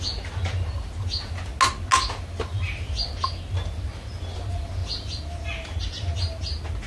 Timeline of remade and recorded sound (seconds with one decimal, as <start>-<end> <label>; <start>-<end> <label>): 0.0-6.9 recorded